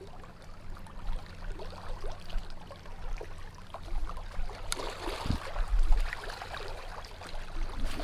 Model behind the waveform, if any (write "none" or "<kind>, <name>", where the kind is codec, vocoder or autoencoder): none